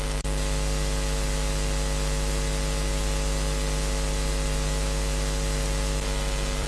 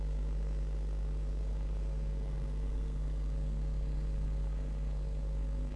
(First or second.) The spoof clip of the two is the second